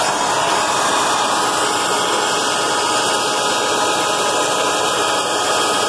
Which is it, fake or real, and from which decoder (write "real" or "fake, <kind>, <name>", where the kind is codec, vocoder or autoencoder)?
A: real